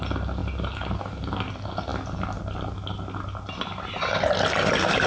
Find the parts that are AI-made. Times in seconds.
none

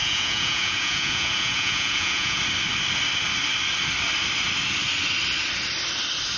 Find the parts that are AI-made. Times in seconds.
0.0-2.4 (vocoder, Vocos)